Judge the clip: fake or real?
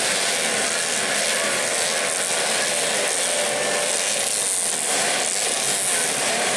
real